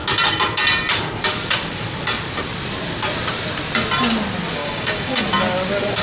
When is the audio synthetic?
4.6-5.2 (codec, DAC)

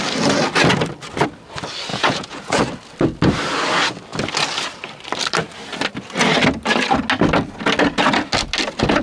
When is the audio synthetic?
1.9-2.6 (vocoder, Vocos)

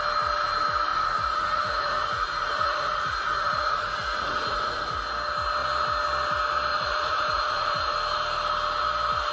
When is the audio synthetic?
0.9-4.9 (vocoder, Vocos); 6.7-7.9

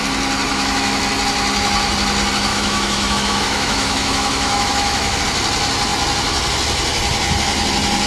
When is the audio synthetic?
0.5-1.0 (autoencoder, DAC-VAE); 2.5-5.2

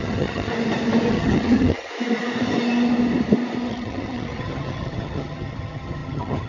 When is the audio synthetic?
0.0-0.5 (vocoder, HiFi-GAN); 1.1-1.9; 3.7-6.5

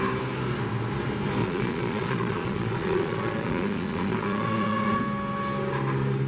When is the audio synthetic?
1.4-5.0 (vocoder, Vocos)

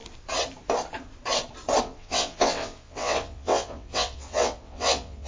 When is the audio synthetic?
1.8-5.3 (vocoder, WaveNeXt)

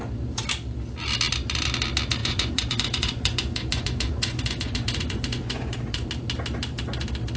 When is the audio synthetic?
2.2-6.1 (vocoder, Vocos)